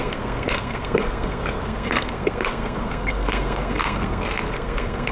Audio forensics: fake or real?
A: fake